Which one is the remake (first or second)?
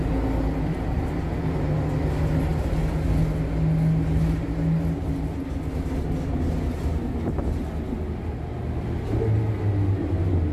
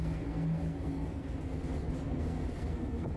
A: second